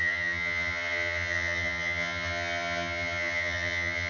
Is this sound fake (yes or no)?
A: yes